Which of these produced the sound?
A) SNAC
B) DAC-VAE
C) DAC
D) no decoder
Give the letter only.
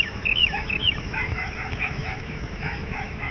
B